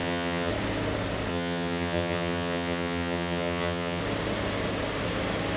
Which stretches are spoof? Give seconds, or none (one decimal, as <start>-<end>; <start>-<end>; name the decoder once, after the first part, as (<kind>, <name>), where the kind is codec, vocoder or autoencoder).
0.0-0.5 (vocoder, HiFi-GAN); 1.3-4.0